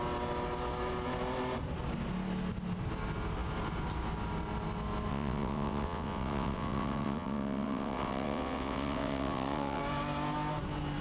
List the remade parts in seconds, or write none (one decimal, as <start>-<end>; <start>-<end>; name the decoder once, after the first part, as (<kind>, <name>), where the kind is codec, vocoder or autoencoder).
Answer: 5.1-9.8 (vocoder, WaveNeXt)